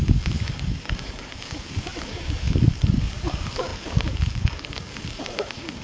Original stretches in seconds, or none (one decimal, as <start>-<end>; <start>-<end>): none